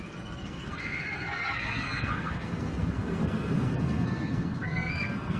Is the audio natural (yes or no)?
no